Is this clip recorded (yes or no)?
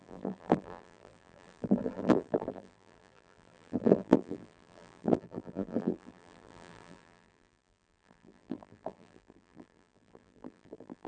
no